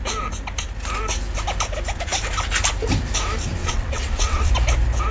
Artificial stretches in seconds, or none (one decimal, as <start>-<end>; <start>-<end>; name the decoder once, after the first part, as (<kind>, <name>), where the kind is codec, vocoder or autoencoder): 3.6-4.5 (vocoder, WaveNeXt)